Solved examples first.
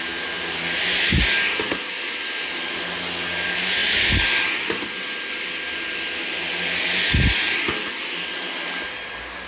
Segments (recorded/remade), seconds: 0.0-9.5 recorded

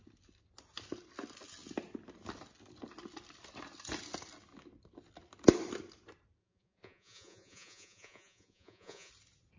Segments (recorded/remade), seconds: 0.0-6.4 recorded; 6.4-9.1 remade; 9.1-9.6 recorded

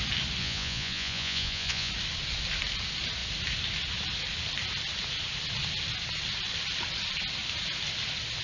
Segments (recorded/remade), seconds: 0.0-0.4 recorded; 0.4-1.9 remade; 1.9-8.4 recorded